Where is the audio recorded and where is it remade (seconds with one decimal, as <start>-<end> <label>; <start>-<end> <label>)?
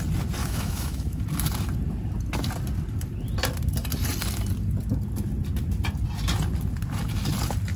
0.0-0.4 recorded; 0.4-1.2 remade; 1.2-7.8 recorded